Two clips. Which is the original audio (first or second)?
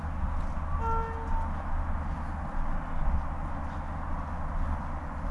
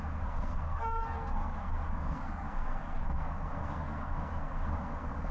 first